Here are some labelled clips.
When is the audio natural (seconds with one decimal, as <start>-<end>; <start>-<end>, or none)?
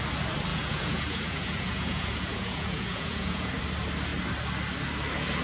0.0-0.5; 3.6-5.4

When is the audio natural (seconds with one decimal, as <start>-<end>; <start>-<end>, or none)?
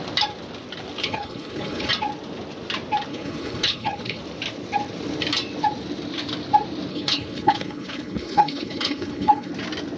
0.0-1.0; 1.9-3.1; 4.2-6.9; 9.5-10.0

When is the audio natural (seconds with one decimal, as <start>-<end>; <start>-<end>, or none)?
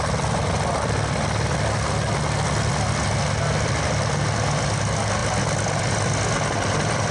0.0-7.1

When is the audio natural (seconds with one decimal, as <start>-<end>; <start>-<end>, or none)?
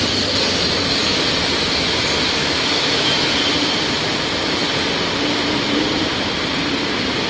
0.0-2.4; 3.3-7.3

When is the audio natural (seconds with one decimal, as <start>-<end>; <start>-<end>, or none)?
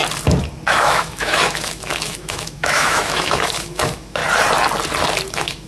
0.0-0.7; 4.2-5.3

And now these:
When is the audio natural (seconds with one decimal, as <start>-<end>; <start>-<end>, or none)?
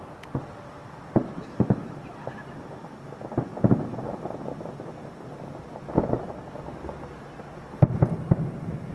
0.0-8.9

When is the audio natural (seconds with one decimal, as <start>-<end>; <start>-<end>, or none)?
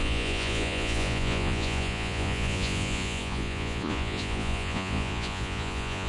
none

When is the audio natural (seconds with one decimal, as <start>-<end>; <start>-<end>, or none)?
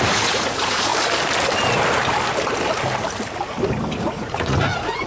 0.9-4.0